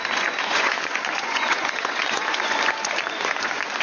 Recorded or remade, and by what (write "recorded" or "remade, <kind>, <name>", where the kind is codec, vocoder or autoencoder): remade, vocoder, Vocos